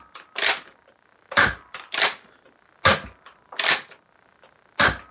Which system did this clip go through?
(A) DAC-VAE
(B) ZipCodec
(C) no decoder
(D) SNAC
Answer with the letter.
C